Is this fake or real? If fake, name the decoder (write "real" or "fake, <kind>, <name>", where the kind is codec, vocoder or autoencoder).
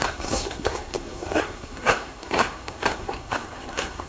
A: fake, codec, SNAC